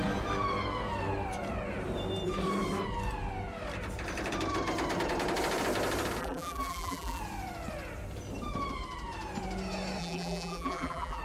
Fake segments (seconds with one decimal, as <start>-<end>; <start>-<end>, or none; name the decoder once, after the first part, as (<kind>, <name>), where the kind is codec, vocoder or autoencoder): 6.2-7.2 (vocoder, BigVGAN v2); 10.0-11.2